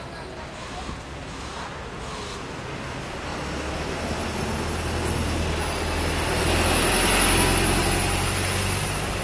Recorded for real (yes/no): yes